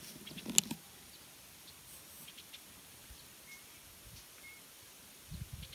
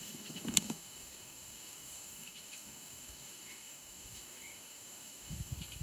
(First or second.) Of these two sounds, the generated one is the second